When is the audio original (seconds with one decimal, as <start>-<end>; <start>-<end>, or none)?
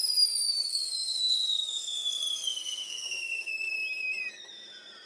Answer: 0.0-0.7; 3.5-5.1